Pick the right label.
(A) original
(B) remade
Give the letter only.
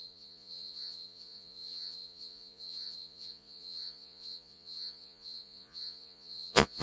B